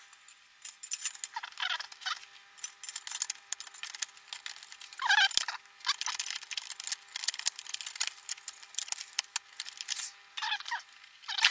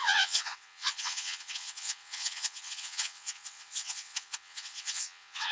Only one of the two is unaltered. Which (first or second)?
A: first